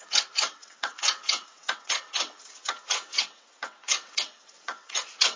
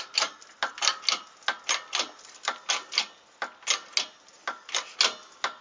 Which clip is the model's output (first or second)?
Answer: first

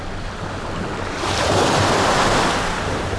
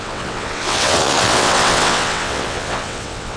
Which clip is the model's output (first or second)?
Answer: second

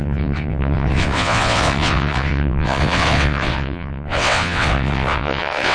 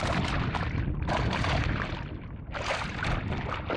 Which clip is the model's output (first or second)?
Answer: first